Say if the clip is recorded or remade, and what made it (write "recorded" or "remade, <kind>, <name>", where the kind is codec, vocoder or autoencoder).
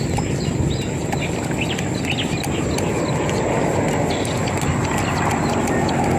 recorded